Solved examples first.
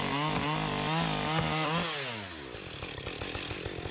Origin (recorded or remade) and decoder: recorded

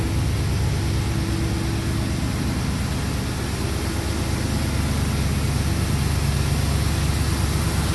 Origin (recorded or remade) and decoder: recorded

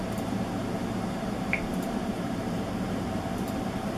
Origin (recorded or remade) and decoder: remade, vocoder, BigVGAN v2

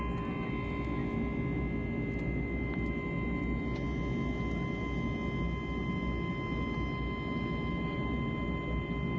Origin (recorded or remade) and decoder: recorded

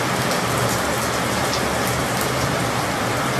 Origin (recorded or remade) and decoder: recorded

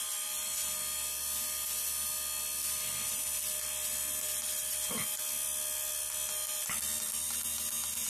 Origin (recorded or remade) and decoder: recorded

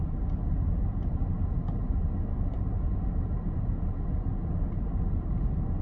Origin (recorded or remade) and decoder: remade, vocoder, BigVGAN v2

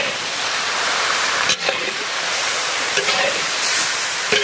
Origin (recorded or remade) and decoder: remade, vocoder, BigVGAN v2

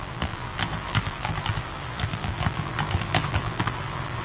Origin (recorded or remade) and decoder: remade, vocoder, BigVGAN v2